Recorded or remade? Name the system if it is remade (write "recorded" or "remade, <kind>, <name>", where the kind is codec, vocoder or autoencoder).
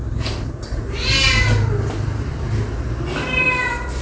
recorded